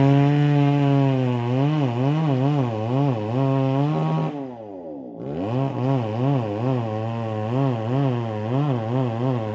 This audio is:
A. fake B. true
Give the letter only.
B